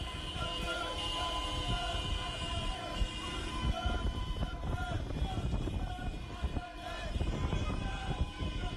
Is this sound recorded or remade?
remade